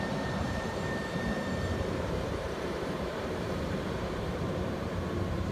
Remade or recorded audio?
remade